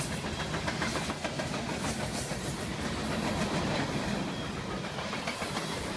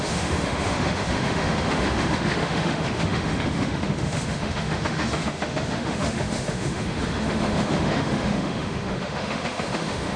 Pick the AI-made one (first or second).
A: second